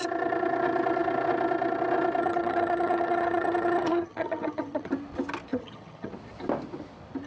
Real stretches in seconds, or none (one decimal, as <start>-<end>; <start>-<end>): 0.0-2.2; 4.9-5.5; 6.1-7.3